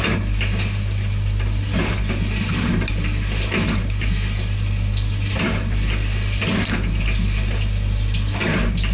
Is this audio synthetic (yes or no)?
no